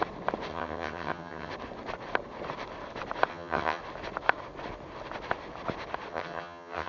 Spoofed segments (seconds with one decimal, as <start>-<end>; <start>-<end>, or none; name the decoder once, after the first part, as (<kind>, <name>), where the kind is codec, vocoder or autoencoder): 0.5-1.5 (vocoder, HiFi-GAN); 3.3-3.8; 6.1-6.9